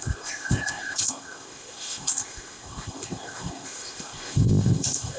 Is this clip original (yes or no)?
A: no